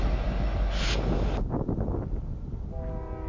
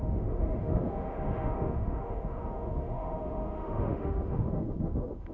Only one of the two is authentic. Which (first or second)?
first